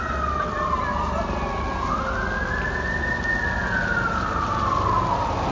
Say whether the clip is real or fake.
real